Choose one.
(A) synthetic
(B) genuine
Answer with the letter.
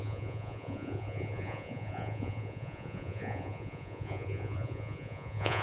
A